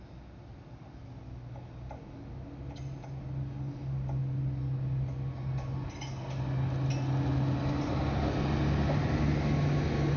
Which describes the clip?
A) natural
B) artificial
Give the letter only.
A